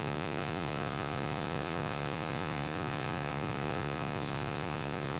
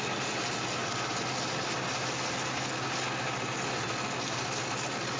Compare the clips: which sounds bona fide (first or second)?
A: second